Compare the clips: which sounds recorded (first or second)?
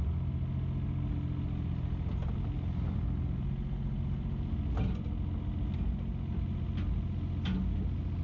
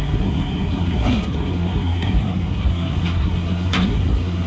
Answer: first